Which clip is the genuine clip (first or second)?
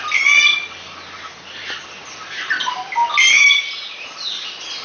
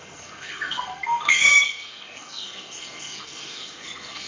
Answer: first